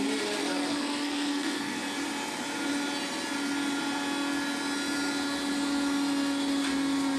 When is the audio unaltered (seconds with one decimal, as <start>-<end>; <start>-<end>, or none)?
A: 0.0-0.4; 1.8-7.2